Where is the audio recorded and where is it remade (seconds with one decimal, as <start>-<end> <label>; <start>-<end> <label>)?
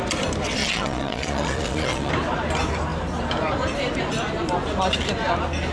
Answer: 0.0-0.6 recorded; 0.6-2.1 remade; 2.1-5.7 recorded